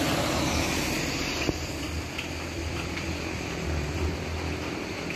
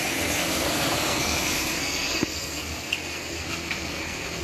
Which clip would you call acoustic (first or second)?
first